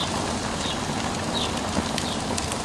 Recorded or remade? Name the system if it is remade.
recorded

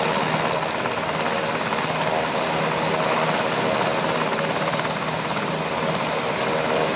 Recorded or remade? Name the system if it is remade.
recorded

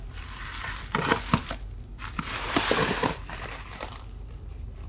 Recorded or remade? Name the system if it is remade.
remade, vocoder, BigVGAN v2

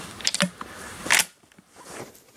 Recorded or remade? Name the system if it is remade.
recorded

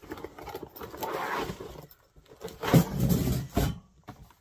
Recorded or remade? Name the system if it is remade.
recorded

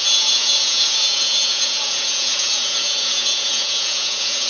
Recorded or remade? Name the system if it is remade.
remade, vocoder, Vocos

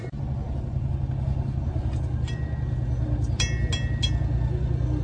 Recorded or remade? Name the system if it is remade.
recorded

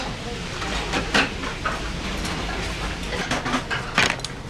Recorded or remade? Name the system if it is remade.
recorded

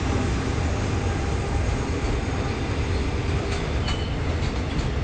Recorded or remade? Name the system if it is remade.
recorded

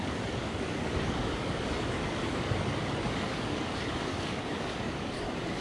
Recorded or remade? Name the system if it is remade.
remade, codec, DAC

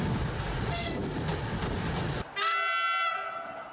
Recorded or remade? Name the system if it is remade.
recorded